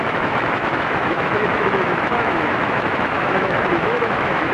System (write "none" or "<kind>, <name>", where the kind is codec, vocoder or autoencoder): autoencoder, DAC-VAE